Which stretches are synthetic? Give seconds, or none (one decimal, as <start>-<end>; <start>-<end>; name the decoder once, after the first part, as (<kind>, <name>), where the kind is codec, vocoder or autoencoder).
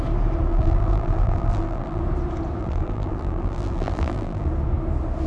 0.5-2.0 (vocoder, BigVGAN v2); 2.6-4.5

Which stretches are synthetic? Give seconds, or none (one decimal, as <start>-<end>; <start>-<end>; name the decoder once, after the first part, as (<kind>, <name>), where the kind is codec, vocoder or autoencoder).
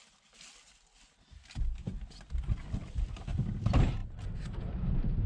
none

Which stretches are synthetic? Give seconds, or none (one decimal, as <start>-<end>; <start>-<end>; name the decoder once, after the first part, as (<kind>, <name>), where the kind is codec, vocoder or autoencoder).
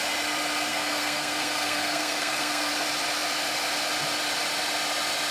0.7-2.7 (codec, SNAC)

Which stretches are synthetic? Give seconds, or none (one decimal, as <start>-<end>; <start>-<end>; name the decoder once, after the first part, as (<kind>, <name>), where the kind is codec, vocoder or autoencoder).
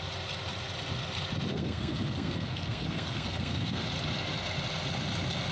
1.5-3.8 (codec, SNAC)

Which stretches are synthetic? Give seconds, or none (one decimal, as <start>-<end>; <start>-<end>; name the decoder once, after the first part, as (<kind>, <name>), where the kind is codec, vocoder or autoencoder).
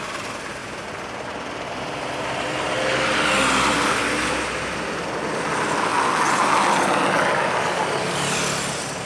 none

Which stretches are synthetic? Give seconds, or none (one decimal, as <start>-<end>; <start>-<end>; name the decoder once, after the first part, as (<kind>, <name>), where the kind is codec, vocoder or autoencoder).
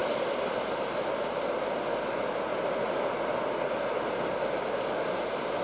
none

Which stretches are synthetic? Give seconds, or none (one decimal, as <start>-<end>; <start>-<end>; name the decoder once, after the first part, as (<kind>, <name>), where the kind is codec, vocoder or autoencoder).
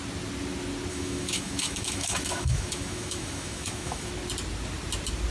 0.9-4.1 (autoencoder, DAC-VAE)